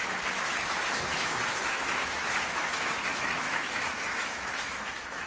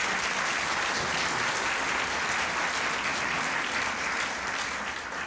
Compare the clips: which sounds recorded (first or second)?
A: second